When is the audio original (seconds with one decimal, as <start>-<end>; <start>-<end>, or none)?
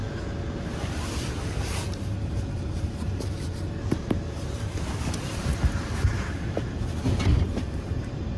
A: 0.0-1.1; 5.5-7.2